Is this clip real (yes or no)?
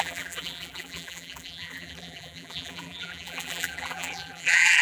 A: no